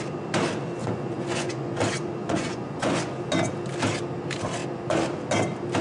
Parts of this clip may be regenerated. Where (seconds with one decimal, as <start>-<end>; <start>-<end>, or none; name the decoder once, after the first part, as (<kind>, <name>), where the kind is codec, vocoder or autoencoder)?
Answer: 0.8-1.8 (vocoder, Vocos); 2.2-3.2